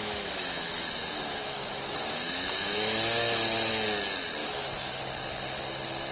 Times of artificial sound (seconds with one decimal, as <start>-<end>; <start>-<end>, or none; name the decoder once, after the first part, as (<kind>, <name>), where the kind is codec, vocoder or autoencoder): 0.0-3.7 (autoencoder, DAC-VAE); 4.4-5.0